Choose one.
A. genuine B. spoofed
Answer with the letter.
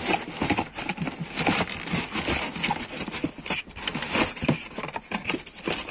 A